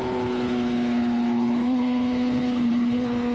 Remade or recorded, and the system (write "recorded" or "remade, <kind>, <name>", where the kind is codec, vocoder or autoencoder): remade, codec, HILCodec